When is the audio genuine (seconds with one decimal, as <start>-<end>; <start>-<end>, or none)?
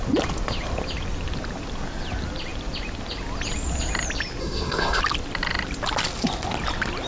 0.0-4.4; 5.0-7.1